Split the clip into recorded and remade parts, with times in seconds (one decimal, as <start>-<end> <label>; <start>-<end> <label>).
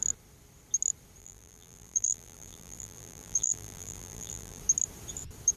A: 0.0-1.2 recorded; 1.2-4.6 remade; 4.6-5.6 recorded